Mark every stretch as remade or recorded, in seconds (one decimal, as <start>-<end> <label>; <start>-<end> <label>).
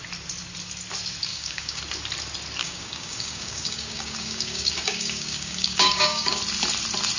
0.0-1.3 recorded; 1.3-1.8 remade; 1.8-2.6 recorded; 2.6-6.4 remade; 6.4-7.2 recorded